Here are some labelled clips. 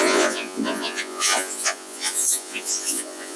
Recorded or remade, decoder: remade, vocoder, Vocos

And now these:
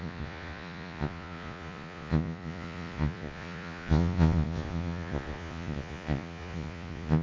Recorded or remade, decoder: remade, vocoder, Vocos